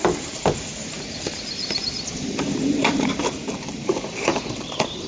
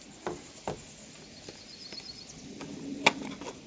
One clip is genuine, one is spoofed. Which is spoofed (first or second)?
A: first